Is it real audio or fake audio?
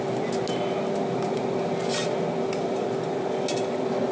real